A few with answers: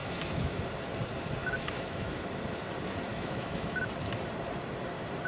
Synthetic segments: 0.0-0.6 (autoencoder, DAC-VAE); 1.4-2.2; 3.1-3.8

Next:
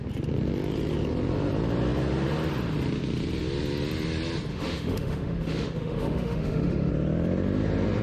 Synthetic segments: 4.5-6.9 (autoencoder, DAC-VAE)

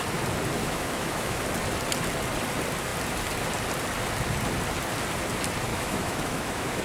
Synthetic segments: 0.6-1.4 (autoencoder, DAC-VAE); 5.7-6.8

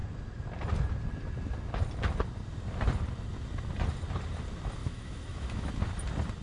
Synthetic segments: 4.8-5.7 (autoencoder, DAC-VAE)